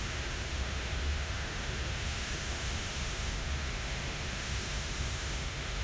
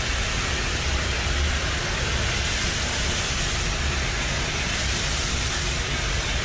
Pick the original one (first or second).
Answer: second